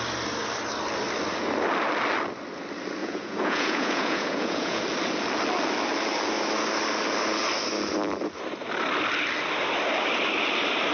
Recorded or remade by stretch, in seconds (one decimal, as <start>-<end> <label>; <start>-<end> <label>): 0.0-3.0 recorded; 3.0-4.8 remade; 4.8-10.9 recorded